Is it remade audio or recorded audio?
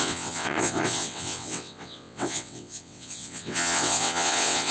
remade